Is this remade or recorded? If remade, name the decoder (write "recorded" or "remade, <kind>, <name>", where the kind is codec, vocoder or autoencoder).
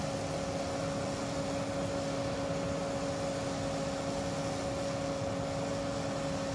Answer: recorded